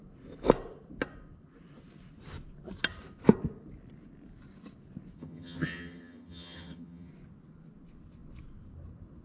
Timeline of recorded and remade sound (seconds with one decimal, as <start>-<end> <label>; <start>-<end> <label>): 0.0-5.2 recorded; 5.2-7.1 remade; 7.1-9.2 recorded